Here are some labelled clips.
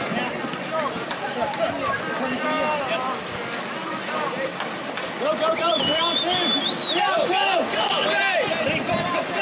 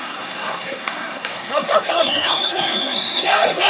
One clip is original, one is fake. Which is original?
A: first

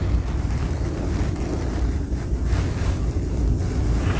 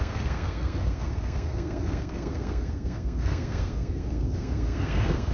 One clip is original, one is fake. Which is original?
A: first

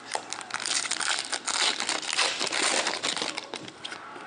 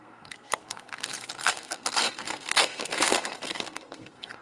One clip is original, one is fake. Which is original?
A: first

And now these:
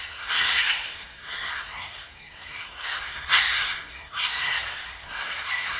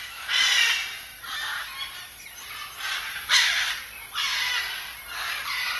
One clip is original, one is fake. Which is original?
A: second